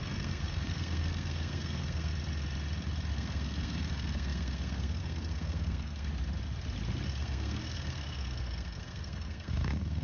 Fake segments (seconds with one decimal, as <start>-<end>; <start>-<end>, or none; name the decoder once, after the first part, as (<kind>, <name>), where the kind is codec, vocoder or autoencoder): 0.0-2.1 (codec, SNAC); 3.1-6.1; 7.2-10.0